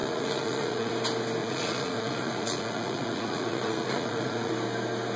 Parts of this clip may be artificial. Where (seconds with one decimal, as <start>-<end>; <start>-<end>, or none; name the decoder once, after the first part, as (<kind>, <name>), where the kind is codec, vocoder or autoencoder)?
0.0-0.9 (vocoder, Vocos); 1.4-4.5